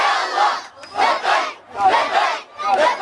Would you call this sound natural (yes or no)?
yes